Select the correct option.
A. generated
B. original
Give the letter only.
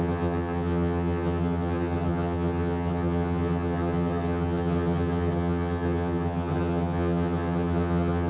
A